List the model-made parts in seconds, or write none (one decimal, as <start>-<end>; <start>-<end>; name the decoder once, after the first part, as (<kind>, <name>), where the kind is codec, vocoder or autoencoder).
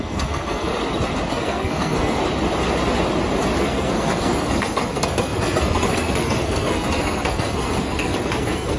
0.0-0.7 (codec, SNAC); 1.3-2.2; 3.6-8.8